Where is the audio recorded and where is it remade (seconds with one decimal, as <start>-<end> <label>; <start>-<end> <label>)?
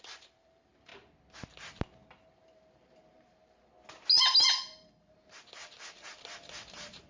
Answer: 0.0-0.9 remade; 0.9-2.3 recorded; 2.3-3.7 remade; 3.7-4.6 recorded; 4.6-7.1 remade